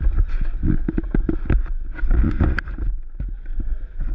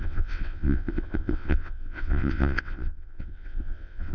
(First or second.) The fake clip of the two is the second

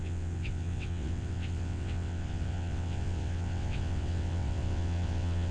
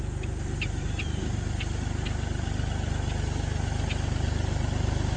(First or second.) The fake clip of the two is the first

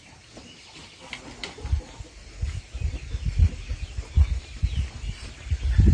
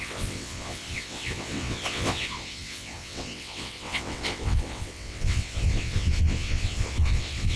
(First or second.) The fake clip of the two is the second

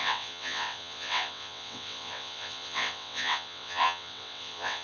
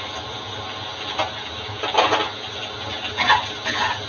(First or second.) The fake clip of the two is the first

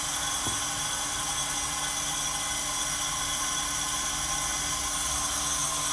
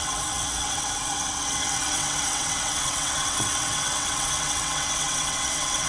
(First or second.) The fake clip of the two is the second